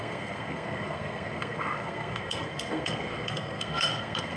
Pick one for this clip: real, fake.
fake